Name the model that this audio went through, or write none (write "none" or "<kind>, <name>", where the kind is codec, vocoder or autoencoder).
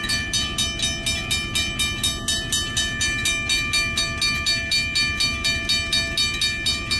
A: none